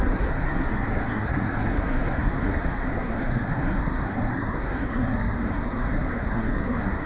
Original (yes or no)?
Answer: no